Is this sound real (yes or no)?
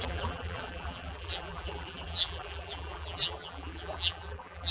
no